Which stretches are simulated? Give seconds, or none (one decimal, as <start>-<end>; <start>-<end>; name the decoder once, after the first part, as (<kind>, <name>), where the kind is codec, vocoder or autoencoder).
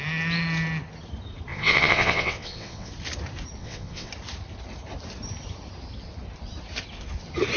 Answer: 1.5-2.9 (vocoder, WaveNeXt); 3.6-4.1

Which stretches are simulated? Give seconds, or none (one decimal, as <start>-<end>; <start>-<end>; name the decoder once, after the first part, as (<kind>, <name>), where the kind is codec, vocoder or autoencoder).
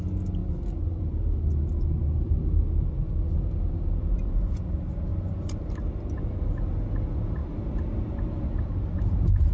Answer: none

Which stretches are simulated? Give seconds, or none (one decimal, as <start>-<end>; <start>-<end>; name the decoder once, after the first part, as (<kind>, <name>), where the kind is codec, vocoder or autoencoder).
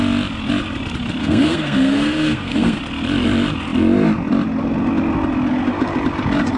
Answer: 1.2-2.8 (codec, SNAC)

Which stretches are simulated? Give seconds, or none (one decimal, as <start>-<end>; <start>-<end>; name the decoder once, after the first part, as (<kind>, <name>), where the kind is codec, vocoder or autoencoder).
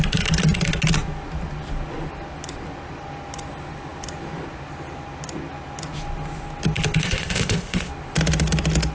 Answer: 7.0-7.9 (codec, ZipCodec)